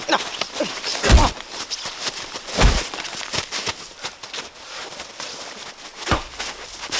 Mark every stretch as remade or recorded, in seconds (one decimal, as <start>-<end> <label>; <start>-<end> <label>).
0.0-0.9 recorded; 0.9-4.2 remade; 4.2-7.0 recorded